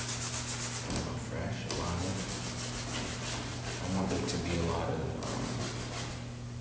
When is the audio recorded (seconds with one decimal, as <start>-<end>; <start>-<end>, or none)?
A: 0.0-6.6